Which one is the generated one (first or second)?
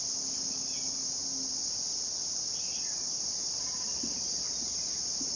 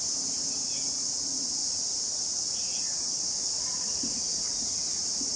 second